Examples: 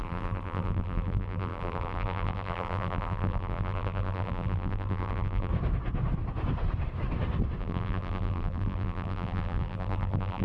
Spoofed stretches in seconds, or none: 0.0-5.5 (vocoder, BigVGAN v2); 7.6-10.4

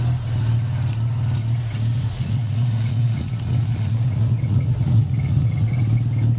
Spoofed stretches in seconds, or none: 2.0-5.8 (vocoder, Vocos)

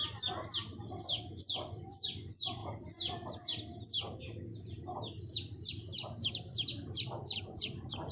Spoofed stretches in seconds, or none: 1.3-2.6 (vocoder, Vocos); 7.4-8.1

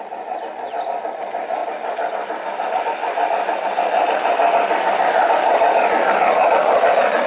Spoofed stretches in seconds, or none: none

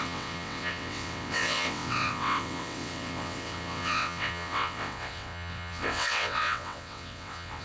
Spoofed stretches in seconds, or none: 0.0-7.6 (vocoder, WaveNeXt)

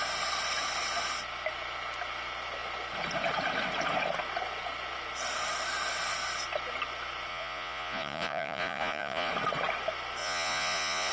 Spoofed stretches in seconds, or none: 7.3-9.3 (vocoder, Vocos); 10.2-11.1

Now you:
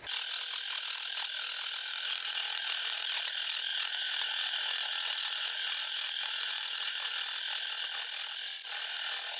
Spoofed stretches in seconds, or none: 1.8-3.2 (vocoder, Vocos); 3.7-7.1

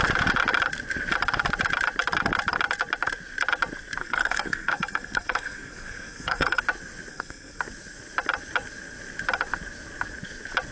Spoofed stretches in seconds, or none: 4.0-6.6 (codec, SNAC); 7.1-7.6